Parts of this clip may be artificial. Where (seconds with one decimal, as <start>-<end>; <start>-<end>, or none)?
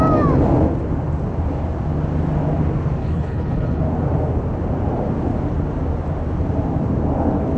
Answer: 3.0-3.8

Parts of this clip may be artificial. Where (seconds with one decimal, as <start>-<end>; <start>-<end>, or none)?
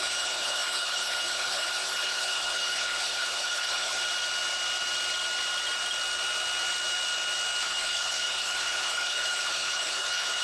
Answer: 0.0-4.0; 7.6-10.4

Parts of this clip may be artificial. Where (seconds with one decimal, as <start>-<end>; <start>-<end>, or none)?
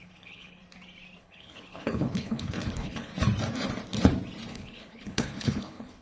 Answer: 0.0-0.6; 1.2-3.1; 4.5-6.0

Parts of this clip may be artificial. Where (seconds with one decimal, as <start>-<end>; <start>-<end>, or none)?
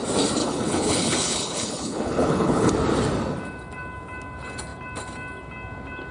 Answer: 0.4-2.7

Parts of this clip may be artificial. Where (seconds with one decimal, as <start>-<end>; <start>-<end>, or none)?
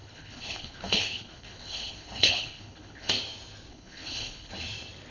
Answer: 0.0-3.1; 3.7-4.5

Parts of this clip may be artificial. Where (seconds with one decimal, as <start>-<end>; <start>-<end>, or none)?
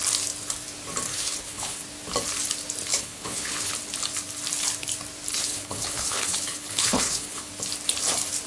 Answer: 1.1-1.8; 2.9-3.7; 5.3-7.5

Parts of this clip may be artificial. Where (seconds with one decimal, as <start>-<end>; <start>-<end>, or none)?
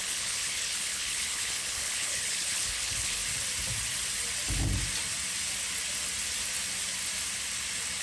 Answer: 0.0-3.2